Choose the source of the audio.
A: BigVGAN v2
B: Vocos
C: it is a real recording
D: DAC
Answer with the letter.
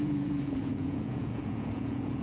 B